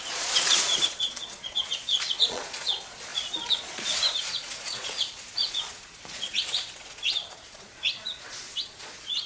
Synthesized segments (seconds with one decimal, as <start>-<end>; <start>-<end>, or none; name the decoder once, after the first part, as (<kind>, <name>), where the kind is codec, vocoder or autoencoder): 0.0-9.3 (vocoder, Vocos)